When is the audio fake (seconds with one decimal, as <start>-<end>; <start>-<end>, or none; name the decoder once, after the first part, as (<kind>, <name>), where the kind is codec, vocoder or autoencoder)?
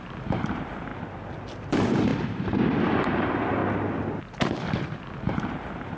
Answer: 0.0-0.9 (vocoder, BigVGAN v2); 1.7-3.6; 5.3-6.0